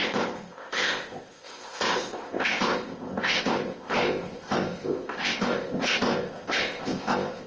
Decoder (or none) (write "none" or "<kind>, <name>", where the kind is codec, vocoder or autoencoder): codec, ZipCodec